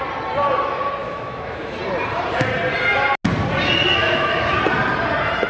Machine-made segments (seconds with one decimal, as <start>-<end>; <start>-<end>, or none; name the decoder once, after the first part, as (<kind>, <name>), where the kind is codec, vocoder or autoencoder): 1.0-1.8 (autoencoder, DAC-VAE); 4.0-4.6